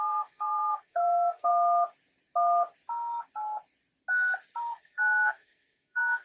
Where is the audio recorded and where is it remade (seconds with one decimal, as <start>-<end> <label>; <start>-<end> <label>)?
0.0-1.5 remade; 1.5-4.6 recorded; 4.6-6.2 remade